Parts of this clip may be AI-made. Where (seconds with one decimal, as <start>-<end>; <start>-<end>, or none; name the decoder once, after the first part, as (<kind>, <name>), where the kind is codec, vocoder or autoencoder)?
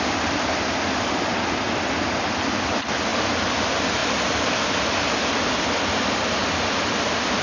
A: none